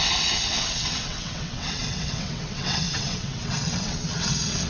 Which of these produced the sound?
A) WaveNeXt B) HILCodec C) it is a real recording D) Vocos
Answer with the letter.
A